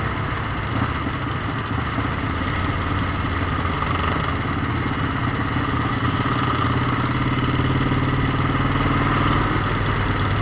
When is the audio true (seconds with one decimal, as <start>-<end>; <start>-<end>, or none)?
0.0-5.2; 6.3-10.4